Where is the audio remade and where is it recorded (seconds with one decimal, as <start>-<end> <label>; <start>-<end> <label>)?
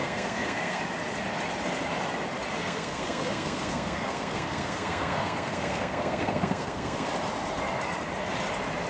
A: 0.0-0.8 remade; 0.8-2.6 recorded; 2.6-7.1 remade; 7.1-8.9 recorded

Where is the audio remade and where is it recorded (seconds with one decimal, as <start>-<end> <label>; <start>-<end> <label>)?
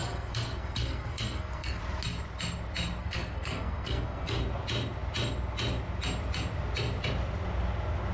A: 0.0-1.8 remade; 1.8-3.0 recorded; 3.0-4.4 remade; 4.4-8.1 recorded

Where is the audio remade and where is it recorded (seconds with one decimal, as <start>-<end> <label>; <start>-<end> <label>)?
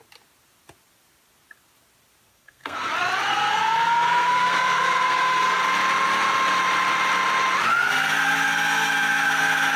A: 0.0-2.3 recorded; 2.3-2.9 remade; 2.9-3.3 recorded; 3.3-5.6 remade; 5.6-7.9 recorded; 7.9-9.8 remade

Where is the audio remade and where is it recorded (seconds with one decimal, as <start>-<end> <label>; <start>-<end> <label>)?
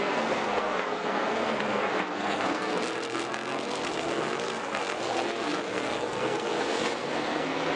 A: 0.0-7.8 remade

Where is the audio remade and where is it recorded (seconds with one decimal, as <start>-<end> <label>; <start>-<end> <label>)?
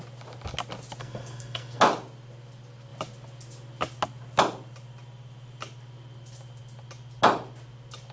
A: 0.0-1.0 recorded; 1.0-1.8 remade; 1.8-8.1 recorded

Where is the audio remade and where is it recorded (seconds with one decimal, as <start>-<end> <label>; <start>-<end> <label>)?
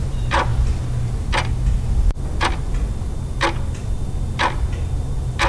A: 0.0-5.5 recorded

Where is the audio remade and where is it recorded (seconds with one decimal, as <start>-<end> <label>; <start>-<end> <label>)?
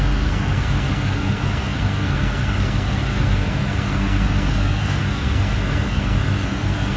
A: 0.0-7.0 remade